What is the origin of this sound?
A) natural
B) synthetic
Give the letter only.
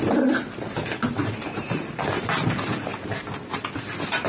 A